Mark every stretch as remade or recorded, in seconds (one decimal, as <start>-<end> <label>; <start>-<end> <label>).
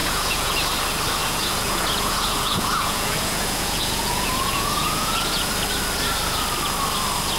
0.0-0.5 remade; 0.5-1.2 recorded; 1.2-5.5 remade; 5.5-7.4 recorded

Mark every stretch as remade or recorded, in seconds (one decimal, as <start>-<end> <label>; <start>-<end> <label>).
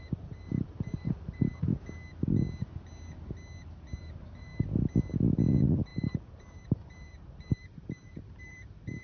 0.0-1.7 remade; 1.7-4.0 recorded; 4.0-4.5 remade; 4.5-5.5 recorded; 5.5-9.0 remade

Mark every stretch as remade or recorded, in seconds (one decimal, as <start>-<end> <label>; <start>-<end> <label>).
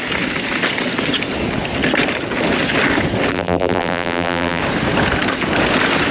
0.0-3.3 recorded; 3.3-4.6 remade; 4.6-6.1 recorded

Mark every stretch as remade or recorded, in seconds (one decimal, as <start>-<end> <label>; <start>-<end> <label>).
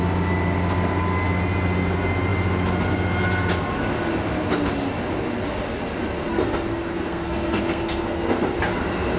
0.0-6.7 recorded; 6.7-8.4 remade; 8.4-9.2 recorded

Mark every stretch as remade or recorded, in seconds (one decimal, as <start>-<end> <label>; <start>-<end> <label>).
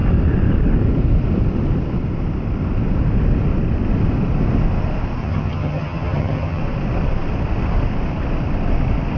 0.0-5.2 recorded; 5.2-6.6 remade; 6.6-9.2 recorded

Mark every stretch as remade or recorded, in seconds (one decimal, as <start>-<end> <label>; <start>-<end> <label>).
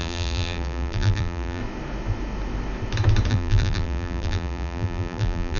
0.0-1.6 remade; 1.6-3.3 recorded; 3.3-5.6 remade